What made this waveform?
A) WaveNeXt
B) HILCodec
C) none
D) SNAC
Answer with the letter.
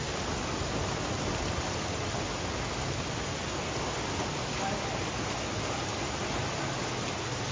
C